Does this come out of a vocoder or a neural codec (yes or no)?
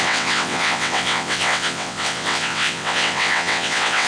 yes